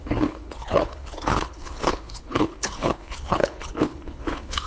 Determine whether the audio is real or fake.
fake